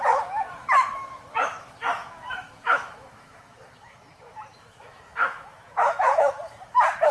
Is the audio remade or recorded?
remade